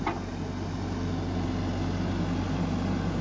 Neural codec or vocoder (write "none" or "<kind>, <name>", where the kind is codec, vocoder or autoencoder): none